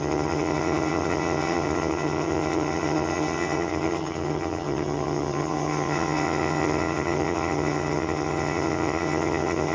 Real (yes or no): no